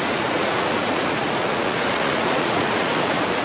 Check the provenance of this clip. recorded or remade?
remade